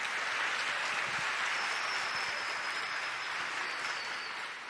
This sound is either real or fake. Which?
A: real